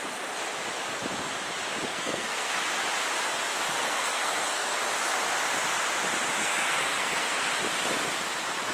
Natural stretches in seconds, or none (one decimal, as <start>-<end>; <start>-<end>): 0.0-1.9; 2.6-3.8; 4.8-6.4; 7.5-8.7